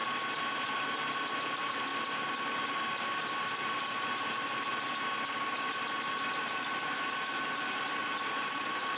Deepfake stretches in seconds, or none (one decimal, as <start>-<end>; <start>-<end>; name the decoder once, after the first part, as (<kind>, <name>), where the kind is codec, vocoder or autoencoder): 1.4-1.9 (vocoder, BigVGAN v2); 3.3-4.7; 6.3-9.0